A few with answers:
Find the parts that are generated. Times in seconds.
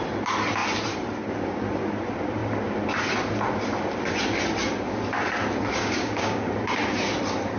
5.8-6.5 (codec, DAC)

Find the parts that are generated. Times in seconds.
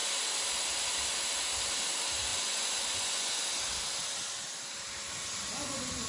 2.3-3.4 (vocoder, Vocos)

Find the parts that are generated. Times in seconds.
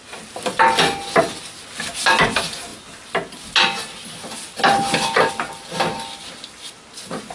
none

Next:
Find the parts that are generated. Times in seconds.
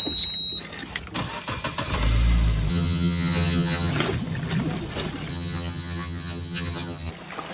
2.7-3.9 (vocoder, HiFi-GAN); 5.3-7.1